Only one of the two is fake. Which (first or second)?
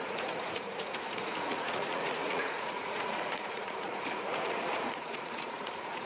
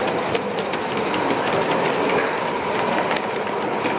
first